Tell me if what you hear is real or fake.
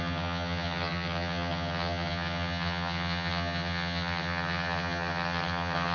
fake